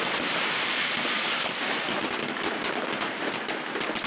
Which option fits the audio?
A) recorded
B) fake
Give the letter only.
A